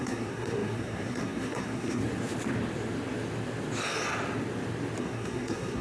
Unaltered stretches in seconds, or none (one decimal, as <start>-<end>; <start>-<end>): 2.0-5.0